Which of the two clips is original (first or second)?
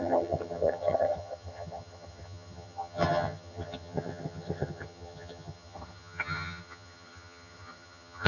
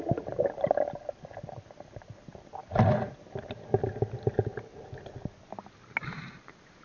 second